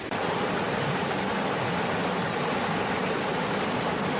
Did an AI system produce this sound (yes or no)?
no